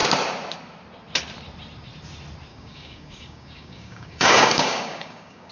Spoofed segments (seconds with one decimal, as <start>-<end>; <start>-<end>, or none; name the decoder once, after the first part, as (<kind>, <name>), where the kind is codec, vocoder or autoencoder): 2.5-5.5 (codec, DAC)